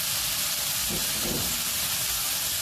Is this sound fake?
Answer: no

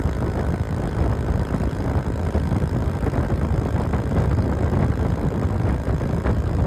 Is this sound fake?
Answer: no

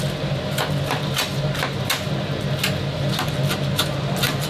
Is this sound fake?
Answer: no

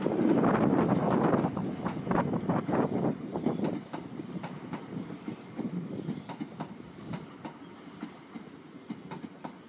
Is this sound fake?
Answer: no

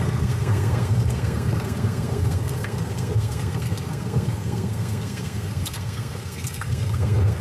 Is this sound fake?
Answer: yes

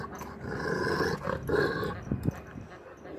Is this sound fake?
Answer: no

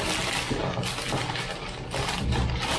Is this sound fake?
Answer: no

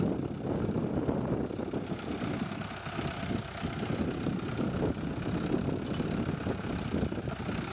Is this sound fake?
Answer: no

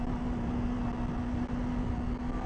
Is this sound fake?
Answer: no